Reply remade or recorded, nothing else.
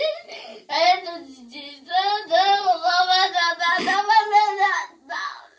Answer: recorded